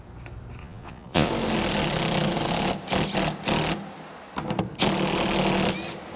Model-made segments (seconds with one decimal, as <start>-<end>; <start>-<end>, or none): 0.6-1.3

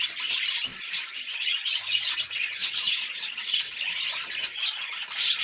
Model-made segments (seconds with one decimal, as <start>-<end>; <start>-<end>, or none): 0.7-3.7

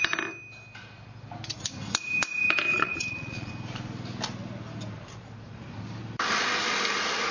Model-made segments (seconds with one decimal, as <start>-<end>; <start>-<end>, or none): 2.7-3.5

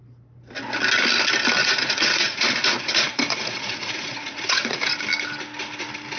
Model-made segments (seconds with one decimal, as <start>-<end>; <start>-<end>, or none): 1.6-5.0

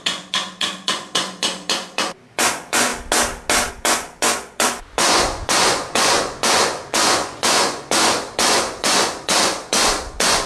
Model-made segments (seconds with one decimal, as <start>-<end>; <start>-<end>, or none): 0.0-2.9; 3.7-10.5

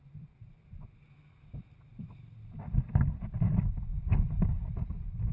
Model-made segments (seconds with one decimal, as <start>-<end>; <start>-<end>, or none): none